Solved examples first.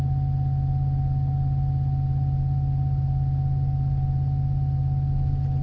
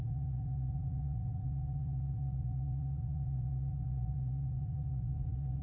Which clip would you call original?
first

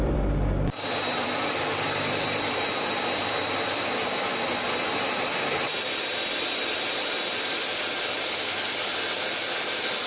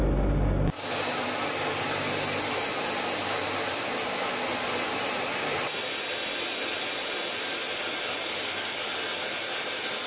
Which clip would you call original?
second